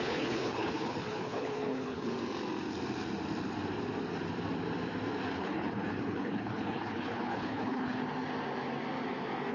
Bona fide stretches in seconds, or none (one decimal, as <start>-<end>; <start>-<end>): 2.1-5.3; 8.0-9.5